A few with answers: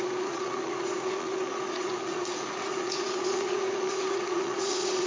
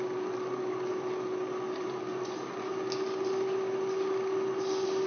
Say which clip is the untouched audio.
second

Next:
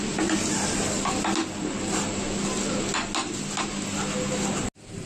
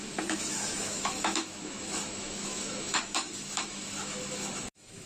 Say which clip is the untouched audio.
first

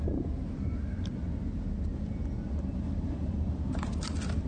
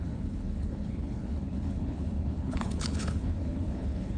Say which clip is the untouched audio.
first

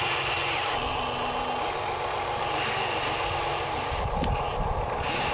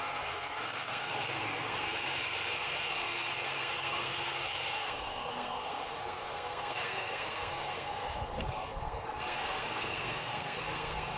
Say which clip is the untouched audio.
first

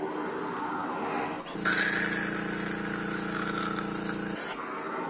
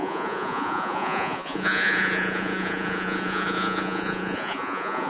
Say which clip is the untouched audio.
first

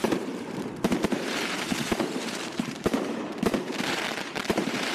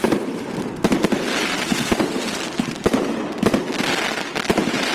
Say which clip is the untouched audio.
second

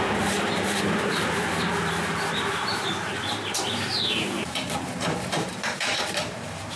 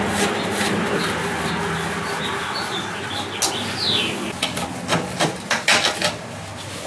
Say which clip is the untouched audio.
second